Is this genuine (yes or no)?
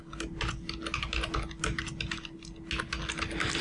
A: yes